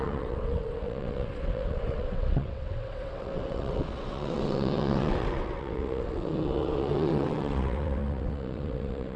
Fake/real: fake